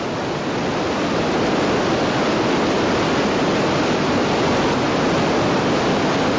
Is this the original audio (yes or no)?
yes